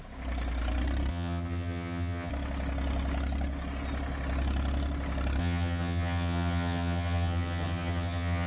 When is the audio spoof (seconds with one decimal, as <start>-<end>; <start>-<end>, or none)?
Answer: 1.1-2.3; 5.4-8.5